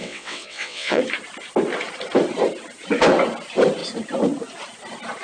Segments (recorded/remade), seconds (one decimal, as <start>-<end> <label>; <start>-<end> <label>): 0.0-1.0 remade; 1.0-5.2 recorded